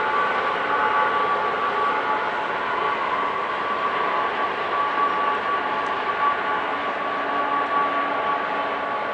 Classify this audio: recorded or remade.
recorded